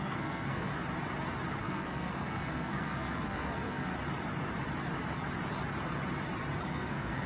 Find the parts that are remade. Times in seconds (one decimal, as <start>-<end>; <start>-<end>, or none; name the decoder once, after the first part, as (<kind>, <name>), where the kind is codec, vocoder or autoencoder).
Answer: 0.0-0.7 (codec, SNAC); 1.6-3.9; 6.7-7.3